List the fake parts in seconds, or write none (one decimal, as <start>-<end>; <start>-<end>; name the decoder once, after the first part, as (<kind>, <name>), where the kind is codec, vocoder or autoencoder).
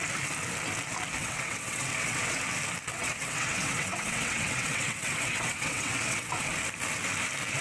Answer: 1.2-2.4 (vocoder, WaveNeXt); 2.9-6.3